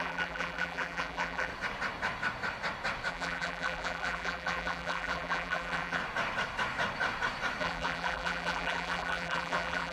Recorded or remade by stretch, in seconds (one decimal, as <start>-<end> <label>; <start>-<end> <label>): 0.0-1.5 remade; 1.5-3.1 recorded; 3.1-6.0 remade; 6.0-7.6 recorded; 7.6-9.9 remade